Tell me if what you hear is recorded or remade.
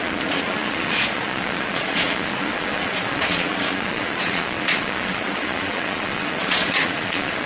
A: remade